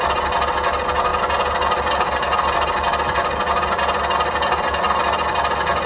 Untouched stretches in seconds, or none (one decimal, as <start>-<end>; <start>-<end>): 0.0-5.9